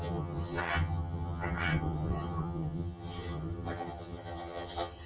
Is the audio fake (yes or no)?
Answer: yes